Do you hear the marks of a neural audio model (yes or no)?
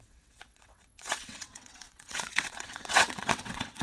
yes